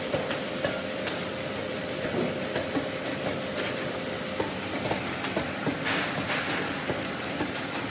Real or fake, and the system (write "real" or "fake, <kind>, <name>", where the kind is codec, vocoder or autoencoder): fake, vocoder, BigVGAN v2